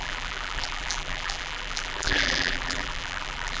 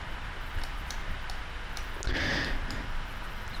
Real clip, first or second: second